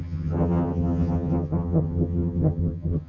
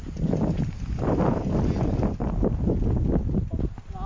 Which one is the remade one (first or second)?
first